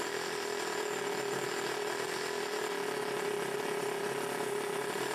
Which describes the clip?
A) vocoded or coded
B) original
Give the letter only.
B